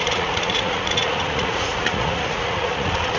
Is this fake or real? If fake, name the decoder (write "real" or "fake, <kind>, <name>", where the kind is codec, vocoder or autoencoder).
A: fake, vocoder, Vocos